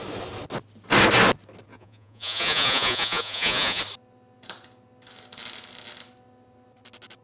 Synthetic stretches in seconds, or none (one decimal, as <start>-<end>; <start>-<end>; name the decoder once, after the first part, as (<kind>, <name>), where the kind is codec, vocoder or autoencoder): 1.7-3.8 (vocoder, Vocos)